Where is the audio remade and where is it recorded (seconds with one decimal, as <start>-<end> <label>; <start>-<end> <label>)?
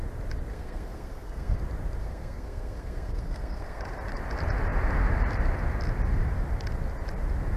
0.0-0.5 recorded; 0.5-1.6 remade; 1.6-2.0 recorded; 2.0-3.8 remade; 3.8-7.6 recorded